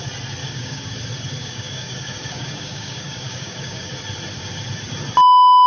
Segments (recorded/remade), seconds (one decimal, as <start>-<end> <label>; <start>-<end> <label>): 0.0-0.4 recorded; 0.4-0.9 remade; 0.9-1.4 recorded; 1.4-3.9 remade; 3.9-5.7 recorded